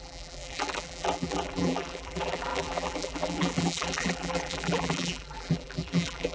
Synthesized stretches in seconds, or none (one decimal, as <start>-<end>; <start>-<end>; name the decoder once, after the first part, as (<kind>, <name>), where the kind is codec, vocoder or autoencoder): 0.0-6.3 (vocoder, BigVGAN v2)